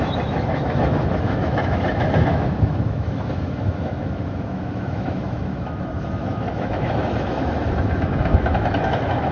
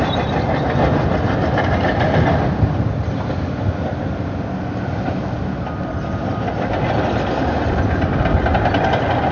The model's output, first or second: first